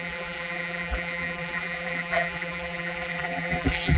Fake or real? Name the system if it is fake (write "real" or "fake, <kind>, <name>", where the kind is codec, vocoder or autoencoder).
fake, vocoder, BigVGAN v2